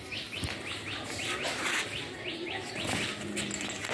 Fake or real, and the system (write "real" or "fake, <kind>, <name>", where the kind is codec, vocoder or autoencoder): real